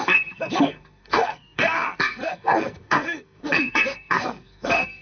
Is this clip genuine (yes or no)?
no